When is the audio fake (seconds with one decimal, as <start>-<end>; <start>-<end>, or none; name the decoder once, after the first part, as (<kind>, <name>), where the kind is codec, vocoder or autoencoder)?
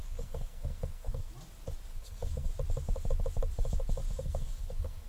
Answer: 0.0-1.3 (codec, SNAC); 1.9-2.5; 4.0-5.1